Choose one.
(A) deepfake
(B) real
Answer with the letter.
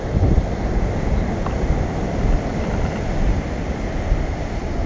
B